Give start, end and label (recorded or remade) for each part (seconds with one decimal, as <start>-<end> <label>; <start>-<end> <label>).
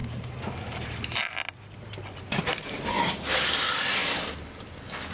0.0-5.1 recorded